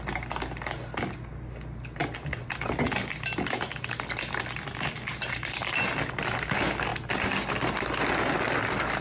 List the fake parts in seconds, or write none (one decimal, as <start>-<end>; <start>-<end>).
none